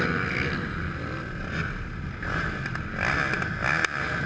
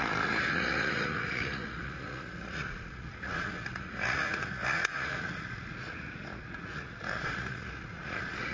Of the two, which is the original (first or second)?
first